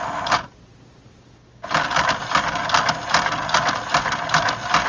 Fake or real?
real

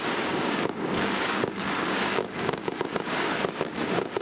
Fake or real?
fake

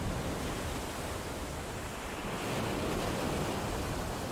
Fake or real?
real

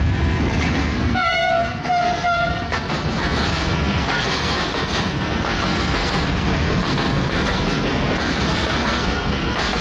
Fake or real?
fake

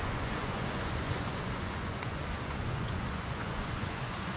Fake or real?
fake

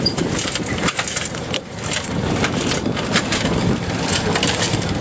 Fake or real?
fake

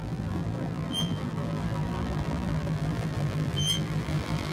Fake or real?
fake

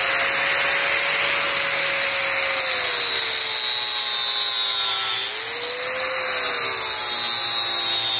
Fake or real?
real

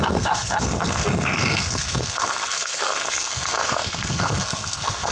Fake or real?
fake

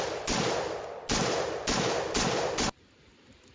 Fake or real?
real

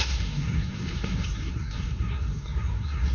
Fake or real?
fake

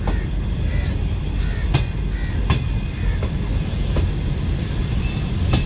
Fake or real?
real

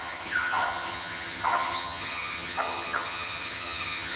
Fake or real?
fake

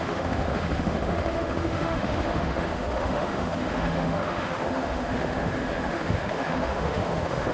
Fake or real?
fake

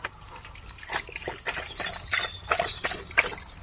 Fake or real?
real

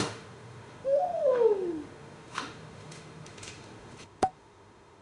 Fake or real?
fake